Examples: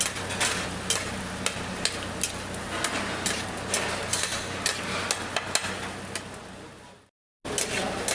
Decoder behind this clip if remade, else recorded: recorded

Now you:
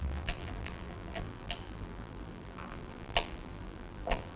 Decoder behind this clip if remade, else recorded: remade, vocoder, BigVGAN v2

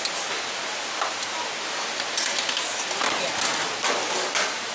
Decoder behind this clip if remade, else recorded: recorded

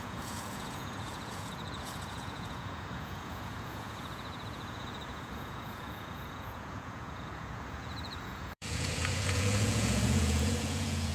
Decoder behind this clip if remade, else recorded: remade, vocoder, Vocos